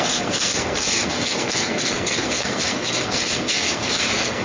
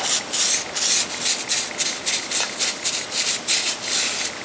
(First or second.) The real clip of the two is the second